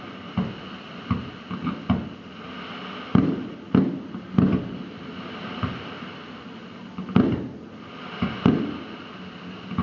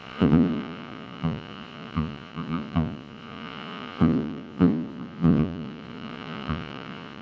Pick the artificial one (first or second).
second